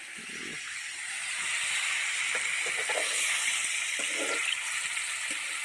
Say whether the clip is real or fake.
fake